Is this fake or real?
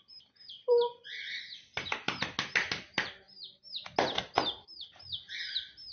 real